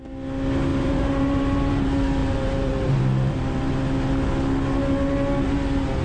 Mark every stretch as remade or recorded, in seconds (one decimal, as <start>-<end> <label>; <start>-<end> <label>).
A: 0.0-0.7 recorded; 0.7-1.7 remade; 1.7-2.2 recorded; 2.2-3.6 remade; 3.6-6.0 recorded